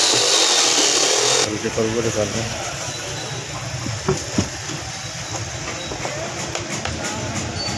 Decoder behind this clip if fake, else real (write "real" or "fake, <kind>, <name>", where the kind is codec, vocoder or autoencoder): real